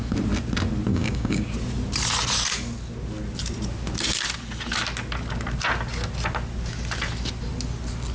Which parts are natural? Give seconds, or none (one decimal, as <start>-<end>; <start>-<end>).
0.0-0.9; 1.5-8.1